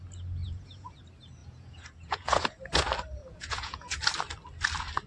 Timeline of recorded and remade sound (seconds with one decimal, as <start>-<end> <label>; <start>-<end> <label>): 0.0-0.4 recorded; 0.4-1.0 remade; 1.0-1.4 recorded; 1.4-2.7 remade; 2.7-3.2 recorded; 3.2-4.0 remade; 4.0-5.1 recorded